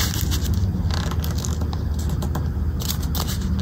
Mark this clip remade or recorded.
recorded